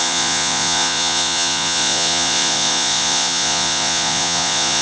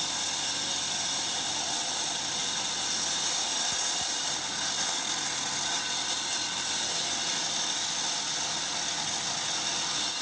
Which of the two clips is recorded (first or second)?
second